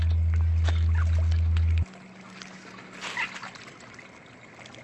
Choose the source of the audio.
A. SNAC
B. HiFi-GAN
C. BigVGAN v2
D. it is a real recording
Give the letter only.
D